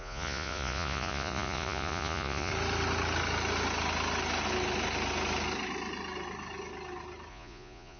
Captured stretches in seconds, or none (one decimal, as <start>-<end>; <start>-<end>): 2.5-7.3

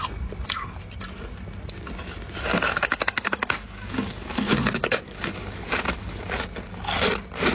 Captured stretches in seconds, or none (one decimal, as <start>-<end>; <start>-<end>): 0.0-2.5; 6.2-7.5

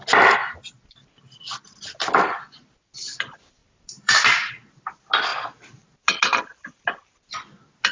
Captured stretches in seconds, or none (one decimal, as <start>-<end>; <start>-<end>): 0.0-3.6; 4.5-7.9

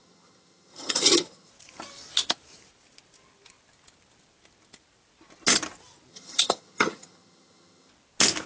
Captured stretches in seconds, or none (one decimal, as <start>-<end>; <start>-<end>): 1.5-6.1; 7.9-8.5